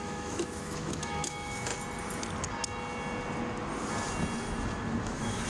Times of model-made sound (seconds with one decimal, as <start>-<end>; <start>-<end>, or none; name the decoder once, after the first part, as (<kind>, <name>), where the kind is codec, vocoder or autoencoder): 0.0-1.7 (autoencoder, DAC-VAE); 5.0-5.5